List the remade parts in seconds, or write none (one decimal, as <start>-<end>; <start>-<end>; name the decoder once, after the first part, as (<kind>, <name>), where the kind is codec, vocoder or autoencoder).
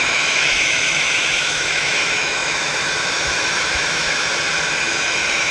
0.0-4.3 (autoencoder, DAC-VAE); 4.9-5.5